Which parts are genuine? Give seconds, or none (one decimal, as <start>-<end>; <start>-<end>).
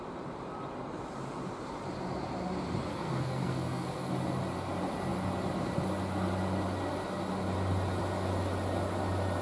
0.0-2.9; 4.1-9.4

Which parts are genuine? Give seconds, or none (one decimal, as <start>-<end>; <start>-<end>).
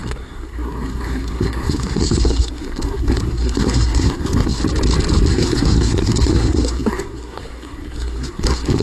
4.6-5.3